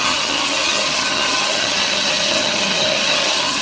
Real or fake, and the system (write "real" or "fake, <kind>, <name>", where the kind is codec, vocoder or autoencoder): fake, vocoder, HiFi-GAN